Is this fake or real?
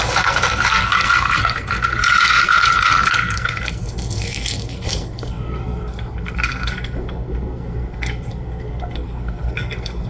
fake